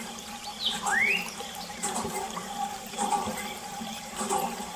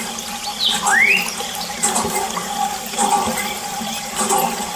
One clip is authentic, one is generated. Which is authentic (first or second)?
second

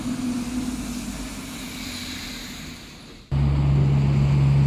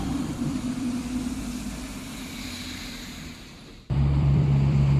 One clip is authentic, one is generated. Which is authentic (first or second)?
first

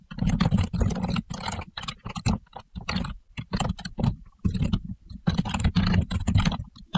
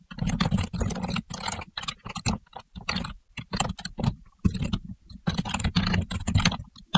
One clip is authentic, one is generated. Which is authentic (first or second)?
second